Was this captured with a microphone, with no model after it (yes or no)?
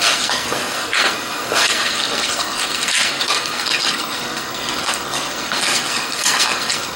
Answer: no